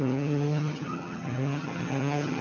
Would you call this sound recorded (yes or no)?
no